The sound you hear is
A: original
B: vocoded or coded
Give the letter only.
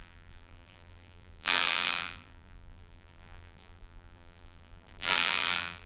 B